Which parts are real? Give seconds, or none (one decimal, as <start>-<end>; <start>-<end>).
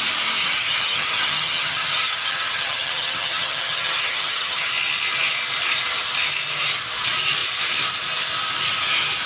0.0-0.4; 4.7-9.3